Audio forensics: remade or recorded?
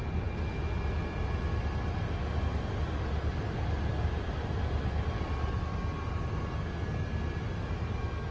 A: recorded